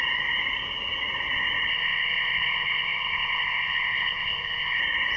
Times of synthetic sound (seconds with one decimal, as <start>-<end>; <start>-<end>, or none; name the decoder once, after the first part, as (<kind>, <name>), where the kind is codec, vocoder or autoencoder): 1.7-4.8 (codec, ZipCodec)